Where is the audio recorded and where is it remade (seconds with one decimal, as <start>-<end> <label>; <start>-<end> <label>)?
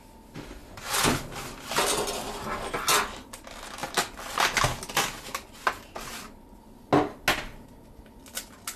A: 0.0-8.8 recorded